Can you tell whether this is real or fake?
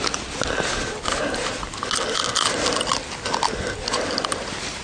real